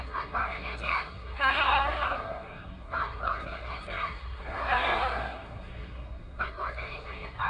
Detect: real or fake fake